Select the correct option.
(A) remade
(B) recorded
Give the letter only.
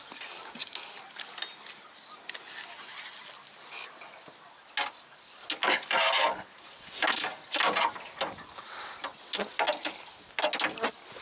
B